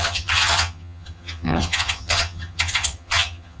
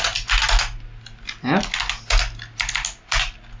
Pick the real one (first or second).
second